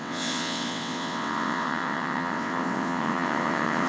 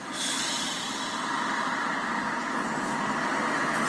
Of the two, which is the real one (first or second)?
second